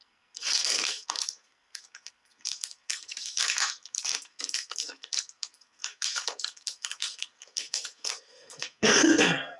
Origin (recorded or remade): remade